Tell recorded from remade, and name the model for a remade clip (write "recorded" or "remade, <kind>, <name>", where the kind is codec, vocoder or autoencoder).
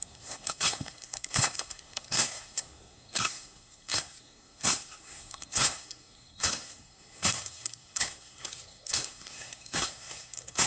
remade, codec, SNAC